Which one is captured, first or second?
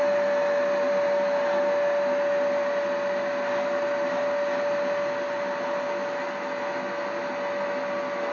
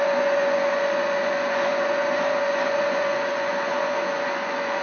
first